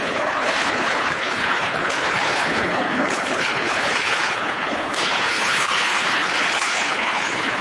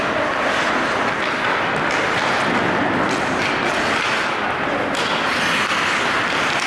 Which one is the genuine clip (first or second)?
second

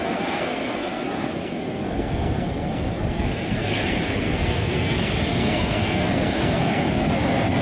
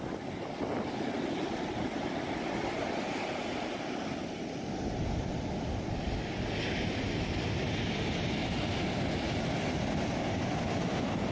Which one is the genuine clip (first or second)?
second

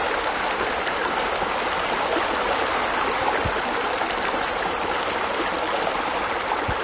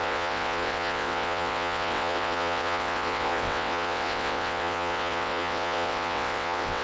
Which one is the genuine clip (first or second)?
first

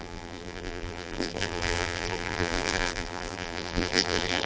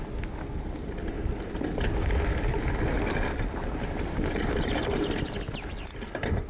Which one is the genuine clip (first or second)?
second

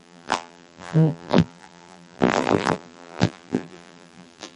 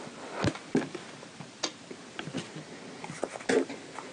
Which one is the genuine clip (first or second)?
second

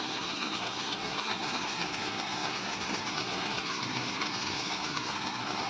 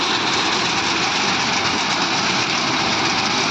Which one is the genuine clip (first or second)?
second